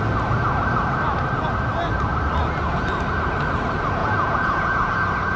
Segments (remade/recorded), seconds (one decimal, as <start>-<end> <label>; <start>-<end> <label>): 0.0-4.0 recorded; 4.0-4.9 remade; 4.9-5.4 recorded